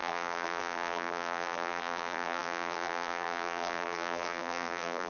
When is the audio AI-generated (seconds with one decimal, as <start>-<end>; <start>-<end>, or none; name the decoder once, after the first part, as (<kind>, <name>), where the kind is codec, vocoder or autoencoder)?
0.0-5.1 (vocoder, BigVGAN v2)